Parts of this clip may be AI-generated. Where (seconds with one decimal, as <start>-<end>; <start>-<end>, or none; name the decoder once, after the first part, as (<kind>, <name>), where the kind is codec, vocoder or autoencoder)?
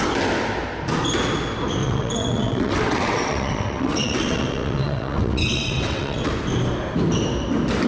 1.8-6.3 (vocoder, WaveNeXt)